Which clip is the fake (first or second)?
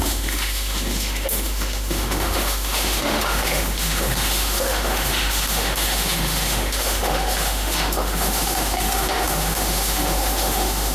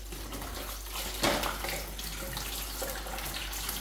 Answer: first